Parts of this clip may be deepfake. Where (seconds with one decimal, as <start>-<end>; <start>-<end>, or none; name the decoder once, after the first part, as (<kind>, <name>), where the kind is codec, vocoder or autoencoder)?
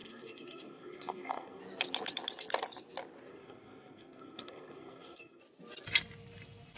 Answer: 0.0-1.6 (codec, SNAC); 3.3-5.4